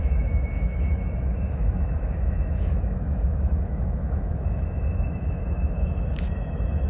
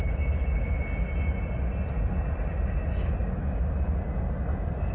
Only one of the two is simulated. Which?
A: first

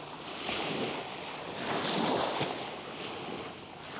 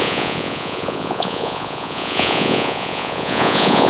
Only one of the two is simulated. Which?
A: second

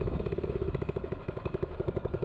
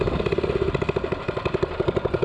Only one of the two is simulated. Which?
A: first